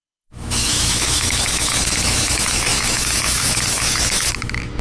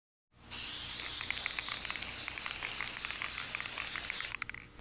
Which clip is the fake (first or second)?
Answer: first